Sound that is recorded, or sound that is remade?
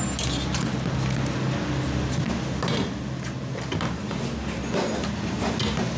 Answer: recorded